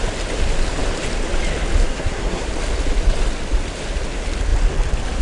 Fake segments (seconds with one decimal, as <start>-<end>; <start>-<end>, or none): 1.8-2.5